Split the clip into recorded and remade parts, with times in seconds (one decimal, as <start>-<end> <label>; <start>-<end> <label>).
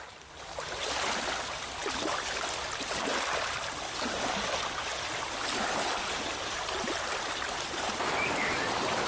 0.0-9.1 recorded